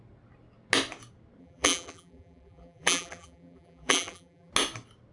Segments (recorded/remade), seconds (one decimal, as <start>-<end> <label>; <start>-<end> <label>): 0.0-1.4 recorded; 1.4-4.5 remade; 4.5-5.1 recorded